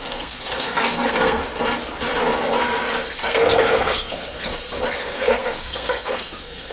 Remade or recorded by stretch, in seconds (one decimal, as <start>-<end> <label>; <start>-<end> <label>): 0.0-1.4 remade; 1.4-3.2 recorded; 3.2-4.5 remade; 4.5-5.0 recorded; 5.0-6.7 remade